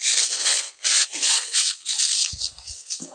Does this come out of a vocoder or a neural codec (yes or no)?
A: yes